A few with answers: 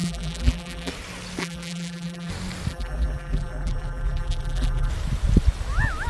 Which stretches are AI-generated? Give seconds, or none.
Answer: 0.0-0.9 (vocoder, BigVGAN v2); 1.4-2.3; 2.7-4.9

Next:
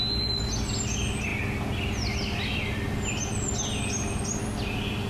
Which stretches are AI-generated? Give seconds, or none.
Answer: none

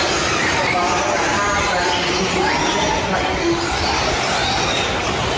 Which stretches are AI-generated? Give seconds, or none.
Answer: none

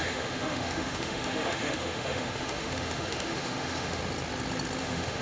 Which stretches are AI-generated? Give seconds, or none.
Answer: 0.0-4.0 (autoencoder, DAC-VAE); 4.8-5.2

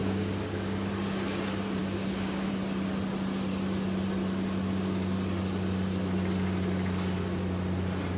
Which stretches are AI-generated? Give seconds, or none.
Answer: 0.0-0.9 (codec, DAC); 1.8-2.5

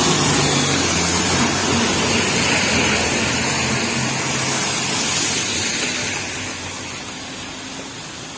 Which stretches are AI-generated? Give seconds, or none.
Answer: none

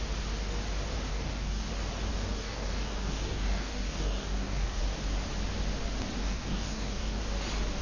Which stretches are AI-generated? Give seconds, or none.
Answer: 1.1-1.7 (codec, DAC); 2.1-4.8; 6.2-7.2

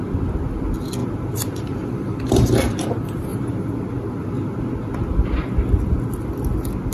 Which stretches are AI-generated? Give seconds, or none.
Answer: 1.0-2.6 (vocoder, BigVGAN v2); 3.3-4.7